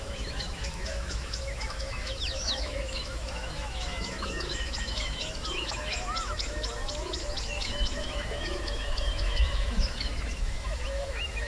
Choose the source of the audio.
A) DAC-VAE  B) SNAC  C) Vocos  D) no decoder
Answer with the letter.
A